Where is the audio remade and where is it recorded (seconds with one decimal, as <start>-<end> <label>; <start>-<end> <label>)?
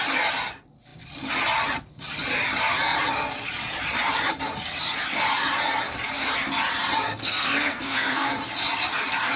0.0-7.1 recorded; 7.1-8.3 remade; 8.3-9.4 recorded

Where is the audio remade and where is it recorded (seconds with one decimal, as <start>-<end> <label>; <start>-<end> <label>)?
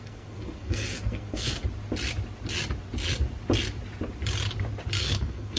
0.0-1.6 remade; 1.6-5.0 recorded; 5.0-5.6 remade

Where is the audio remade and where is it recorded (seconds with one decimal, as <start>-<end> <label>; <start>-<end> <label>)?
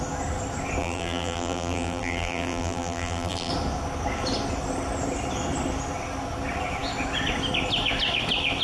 0.0-0.8 recorded; 0.8-3.5 remade; 3.5-8.6 recorded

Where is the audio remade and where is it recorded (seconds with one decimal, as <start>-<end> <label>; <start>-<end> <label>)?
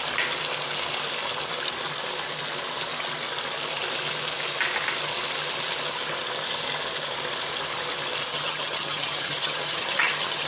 0.0-8.3 recorded; 8.3-10.5 remade